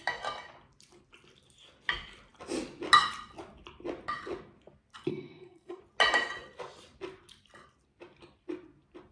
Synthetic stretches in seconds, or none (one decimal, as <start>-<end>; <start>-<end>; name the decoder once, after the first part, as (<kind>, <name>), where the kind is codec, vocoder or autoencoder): 5.1-5.8 (codec, SNAC)